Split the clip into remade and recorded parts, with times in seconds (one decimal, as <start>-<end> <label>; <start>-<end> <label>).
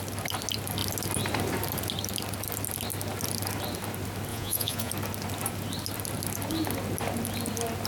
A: 0.0-4.3 recorded; 4.3-4.9 remade; 4.9-7.9 recorded